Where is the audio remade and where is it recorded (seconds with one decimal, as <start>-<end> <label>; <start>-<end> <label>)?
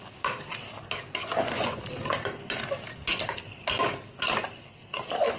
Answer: 0.0-1.2 recorded; 1.2-1.8 remade; 1.8-5.4 recorded